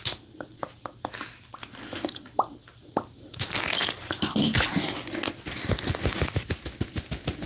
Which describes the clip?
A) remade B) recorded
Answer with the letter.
B